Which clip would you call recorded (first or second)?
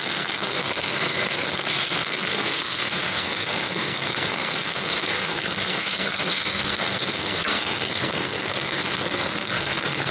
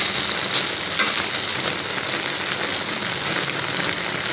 second